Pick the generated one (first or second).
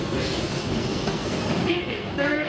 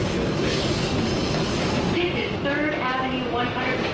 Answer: first